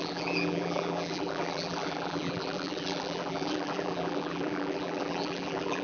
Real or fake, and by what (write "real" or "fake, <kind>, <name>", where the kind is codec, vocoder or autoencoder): fake, vocoder, BigVGAN v2